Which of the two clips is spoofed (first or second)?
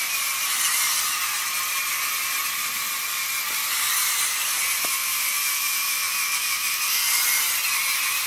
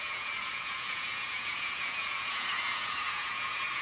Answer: second